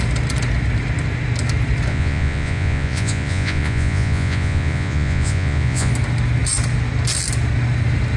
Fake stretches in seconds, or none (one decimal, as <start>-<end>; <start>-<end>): 1.9-5.9